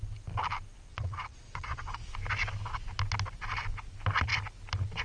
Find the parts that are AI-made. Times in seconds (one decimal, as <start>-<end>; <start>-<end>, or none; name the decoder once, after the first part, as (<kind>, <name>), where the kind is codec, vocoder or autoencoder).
0.9-2.1 (vocoder, Vocos)